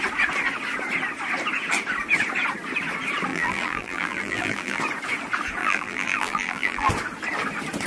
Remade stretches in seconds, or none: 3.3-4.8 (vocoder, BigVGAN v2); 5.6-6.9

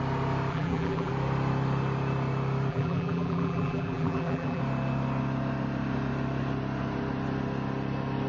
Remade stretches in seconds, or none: 0.5-1.1 (vocoder, BigVGAN v2); 2.7-4.6

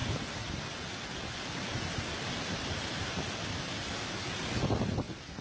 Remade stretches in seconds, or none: 0.0-5.4 (vocoder, BigVGAN v2)

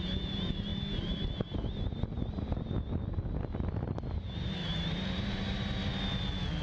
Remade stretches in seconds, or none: 4.6-5.9 (vocoder, BigVGAN v2)

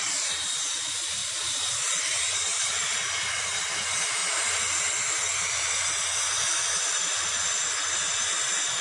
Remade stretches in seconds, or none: 0.0-4.2 (vocoder, BigVGAN v2); 7.7-8.8

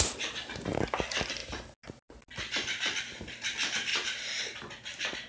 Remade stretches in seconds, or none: 3.9-5.3 (vocoder, BigVGAN v2)